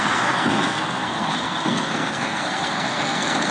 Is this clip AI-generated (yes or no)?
yes